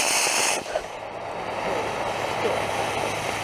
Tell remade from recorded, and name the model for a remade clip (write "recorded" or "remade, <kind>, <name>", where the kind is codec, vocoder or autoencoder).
recorded